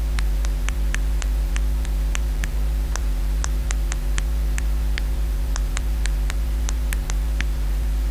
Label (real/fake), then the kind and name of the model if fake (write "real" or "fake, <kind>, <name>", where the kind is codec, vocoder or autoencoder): fake, vocoder, BigVGAN v2